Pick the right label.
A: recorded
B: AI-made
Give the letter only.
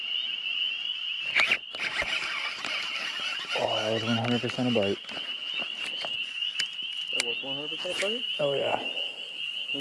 A